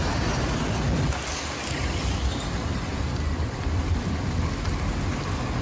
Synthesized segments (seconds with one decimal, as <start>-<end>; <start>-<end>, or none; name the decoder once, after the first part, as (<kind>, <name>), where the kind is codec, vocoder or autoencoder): 2.9-4.6 (vocoder, BigVGAN v2)